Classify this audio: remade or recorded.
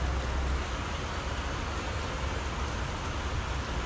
recorded